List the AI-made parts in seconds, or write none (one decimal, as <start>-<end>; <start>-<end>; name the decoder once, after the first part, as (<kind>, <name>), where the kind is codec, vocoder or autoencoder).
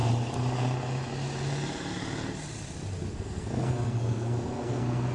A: 3.1-5.1 (codec, SNAC)